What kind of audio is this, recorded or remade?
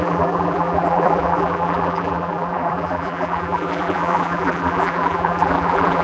remade